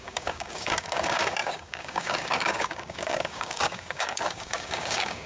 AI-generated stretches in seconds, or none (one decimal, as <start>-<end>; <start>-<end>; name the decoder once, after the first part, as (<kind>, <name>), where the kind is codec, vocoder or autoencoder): 0.0-5.3 (codec, DAC)